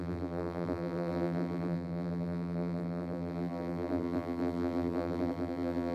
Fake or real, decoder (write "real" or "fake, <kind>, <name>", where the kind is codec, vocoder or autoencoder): fake, vocoder, BigVGAN v2